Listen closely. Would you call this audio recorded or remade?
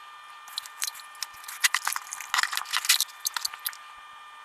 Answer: recorded